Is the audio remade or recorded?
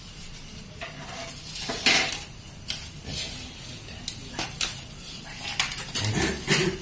recorded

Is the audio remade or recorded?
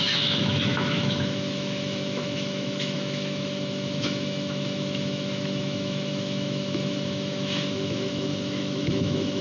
remade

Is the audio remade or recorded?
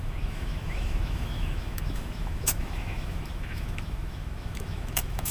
remade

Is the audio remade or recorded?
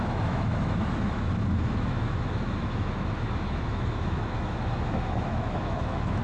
remade